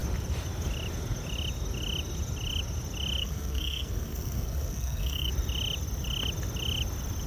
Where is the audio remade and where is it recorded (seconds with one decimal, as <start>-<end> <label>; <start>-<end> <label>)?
0.0-3.2 recorded; 3.2-5.3 remade; 5.3-7.3 recorded

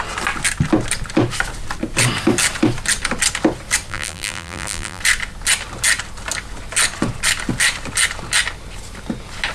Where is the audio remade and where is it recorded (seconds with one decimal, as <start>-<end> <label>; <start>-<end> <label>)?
0.0-3.9 recorded; 3.9-5.0 remade; 5.0-9.5 recorded

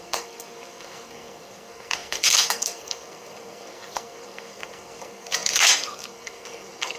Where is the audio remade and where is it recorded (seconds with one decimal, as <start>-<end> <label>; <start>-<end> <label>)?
0.0-7.0 remade

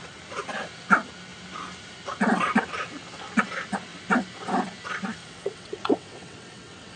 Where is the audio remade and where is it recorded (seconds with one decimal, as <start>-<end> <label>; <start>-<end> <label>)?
0.0-5.2 recorded; 5.2-7.0 remade

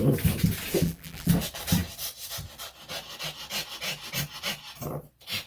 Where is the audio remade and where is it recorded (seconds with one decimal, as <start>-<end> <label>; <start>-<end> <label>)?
0.0-0.8 recorded; 0.8-1.3 remade; 1.3-5.5 recorded

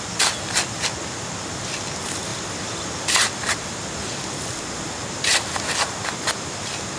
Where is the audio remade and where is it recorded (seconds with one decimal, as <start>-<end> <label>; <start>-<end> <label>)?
0.0-7.0 recorded

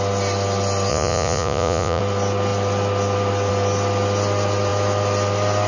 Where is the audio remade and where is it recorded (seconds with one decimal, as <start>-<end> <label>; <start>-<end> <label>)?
0.0-0.9 recorded; 0.9-2.0 remade; 2.0-5.7 recorded